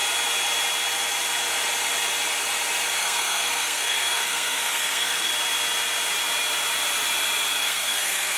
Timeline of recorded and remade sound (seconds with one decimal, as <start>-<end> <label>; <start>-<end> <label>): 0.0-3.0 recorded; 3.0-5.3 remade; 5.3-7.6 recorded; 7.6-8.4 remade